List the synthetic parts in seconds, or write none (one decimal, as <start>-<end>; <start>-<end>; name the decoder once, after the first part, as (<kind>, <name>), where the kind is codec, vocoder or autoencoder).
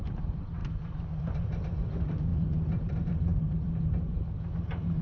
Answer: 0.0-5.0 (vocoder, BigVGAN v2)